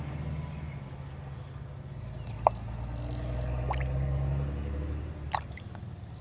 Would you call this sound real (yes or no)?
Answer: yes